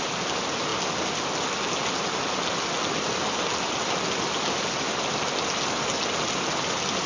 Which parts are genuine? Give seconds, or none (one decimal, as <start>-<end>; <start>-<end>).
0.0-7.1